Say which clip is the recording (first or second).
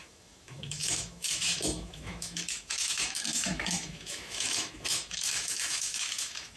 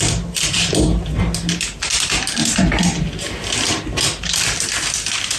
second